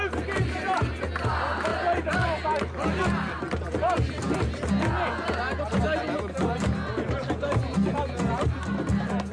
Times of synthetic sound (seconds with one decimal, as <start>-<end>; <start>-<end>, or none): none